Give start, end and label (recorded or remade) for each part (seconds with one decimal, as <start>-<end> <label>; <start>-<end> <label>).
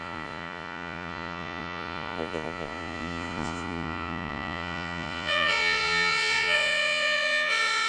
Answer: 0.0-7.9 remade